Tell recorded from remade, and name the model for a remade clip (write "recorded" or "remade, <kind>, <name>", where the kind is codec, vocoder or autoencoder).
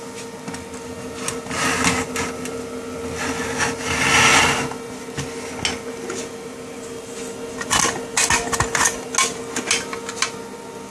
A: recorded